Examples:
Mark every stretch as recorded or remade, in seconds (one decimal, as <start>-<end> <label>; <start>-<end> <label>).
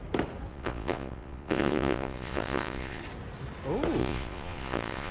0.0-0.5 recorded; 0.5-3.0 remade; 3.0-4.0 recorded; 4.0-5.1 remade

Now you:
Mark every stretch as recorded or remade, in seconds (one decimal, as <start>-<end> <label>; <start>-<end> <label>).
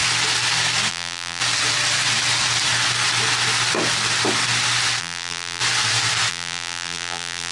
0.0-0.9 recorded; 0.9-1.4 remade; 1.4-5.0 recorded; 5.0-5.6 remade; 5.6-6.3 recorded; 6.3-7.5 remade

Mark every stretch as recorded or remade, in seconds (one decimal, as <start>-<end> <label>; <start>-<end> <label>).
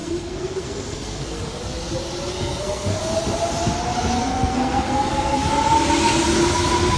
0.0-1.6 remade; 1.6-2.3 recorded; 2.3-3.0 remade; 3.0-4.2 recorded; 4.2-5.5 remade; 5.5-7.0 recorded